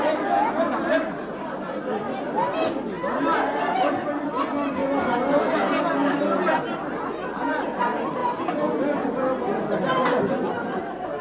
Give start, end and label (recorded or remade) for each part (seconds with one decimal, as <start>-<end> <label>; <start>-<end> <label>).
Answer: 0.0-11.2 recorded